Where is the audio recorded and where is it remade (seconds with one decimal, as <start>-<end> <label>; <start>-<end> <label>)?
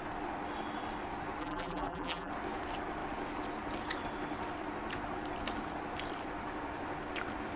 0.0-1.4 recorded; 1.4-2.3 remade; 2.3-7.6 recorded